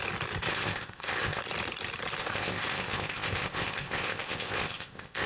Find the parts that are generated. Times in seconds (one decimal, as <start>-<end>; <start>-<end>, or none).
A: 0.5-1.4; 2.2-5.3